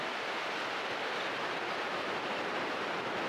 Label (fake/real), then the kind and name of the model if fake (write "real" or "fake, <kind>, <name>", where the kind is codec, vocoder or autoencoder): real